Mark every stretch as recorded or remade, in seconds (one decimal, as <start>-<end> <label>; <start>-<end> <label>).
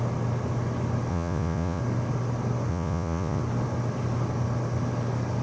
0.0-1.1 recorded; 1.1-1.8 remade; 1.8-2.7 recorded; 2.7-3.4 remade; 3.4-5.4 recorded